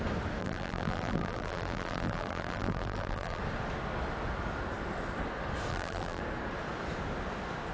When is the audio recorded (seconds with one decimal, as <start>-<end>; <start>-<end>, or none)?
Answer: 0.0-0.4; 3.4-5.7; 6.2-7.7